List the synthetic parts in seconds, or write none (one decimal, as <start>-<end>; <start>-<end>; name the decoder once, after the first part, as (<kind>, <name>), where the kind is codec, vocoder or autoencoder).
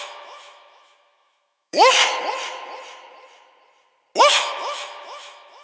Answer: 0.0-2.0 (autoencoder, DAC-VAE); 4.2-5.6